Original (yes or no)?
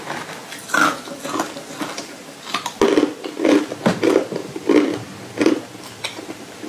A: yes